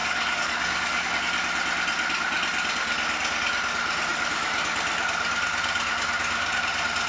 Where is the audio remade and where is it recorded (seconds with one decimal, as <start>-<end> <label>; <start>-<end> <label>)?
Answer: 0.0-1.2 remade; 1.2-7.1 recorded